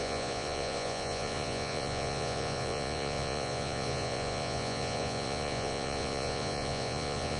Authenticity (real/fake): fake